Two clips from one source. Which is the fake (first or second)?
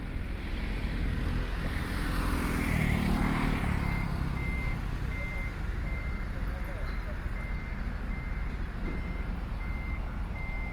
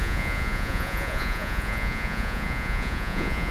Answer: second